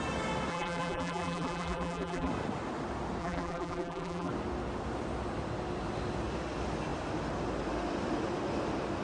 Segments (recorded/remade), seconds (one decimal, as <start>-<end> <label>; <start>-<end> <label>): 0.0-0.5 recorded; 0.5-2.3 remade; 2.3-3.2 recorded; 3.2-4.3 remade; 4.3-9.0 recorded